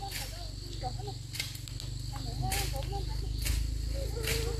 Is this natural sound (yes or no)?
yes